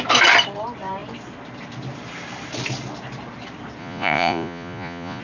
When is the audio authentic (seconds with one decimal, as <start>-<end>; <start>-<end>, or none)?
0.0-3.8